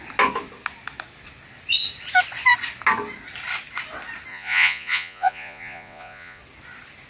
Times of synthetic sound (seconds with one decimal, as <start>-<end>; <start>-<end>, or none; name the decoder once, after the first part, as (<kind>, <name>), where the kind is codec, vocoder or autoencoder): 4.3-6.4 (vocoder, Vocos)